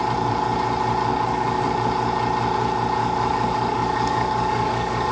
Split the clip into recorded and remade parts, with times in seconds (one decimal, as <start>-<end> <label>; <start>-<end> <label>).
0.0-1.1 recorded; 1.1-1.6 remade; 1.6-3.0 recorded; 3.0-5.1 remade